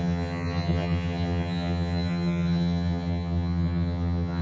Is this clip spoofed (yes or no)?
yes